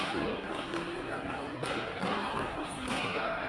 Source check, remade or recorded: remade